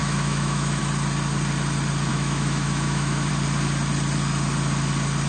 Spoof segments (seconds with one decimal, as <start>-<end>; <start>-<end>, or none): 0.0-0.8; 2.1-3.3